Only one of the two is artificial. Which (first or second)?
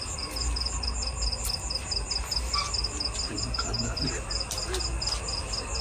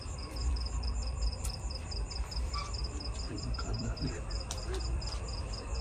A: second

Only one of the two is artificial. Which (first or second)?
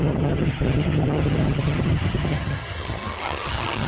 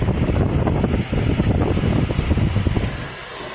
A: first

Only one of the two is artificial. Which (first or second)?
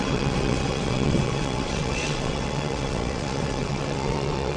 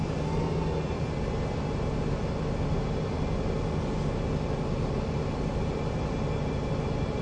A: first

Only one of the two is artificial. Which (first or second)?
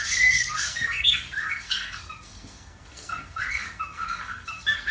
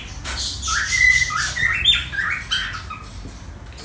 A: first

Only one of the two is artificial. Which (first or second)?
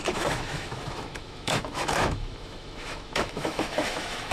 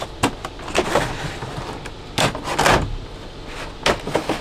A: first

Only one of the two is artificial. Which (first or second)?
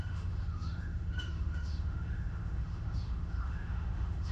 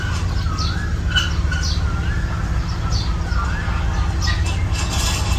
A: first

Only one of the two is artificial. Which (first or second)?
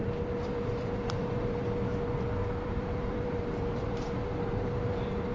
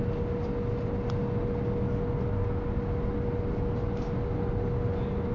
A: first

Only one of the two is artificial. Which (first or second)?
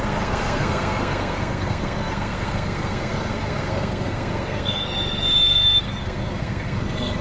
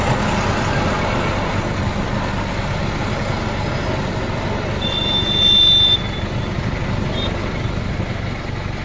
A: first